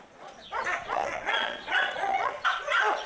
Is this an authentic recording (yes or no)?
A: no